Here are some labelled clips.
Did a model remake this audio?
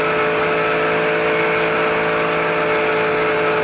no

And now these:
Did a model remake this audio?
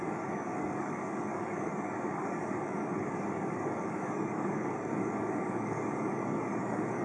yes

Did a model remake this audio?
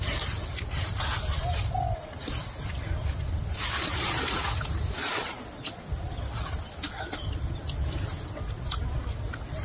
no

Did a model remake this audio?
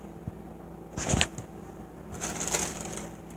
no